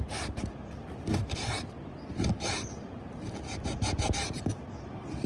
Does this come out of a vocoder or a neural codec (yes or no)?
no